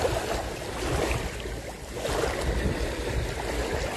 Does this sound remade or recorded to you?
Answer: recorded